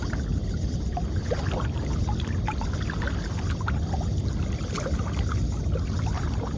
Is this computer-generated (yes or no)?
no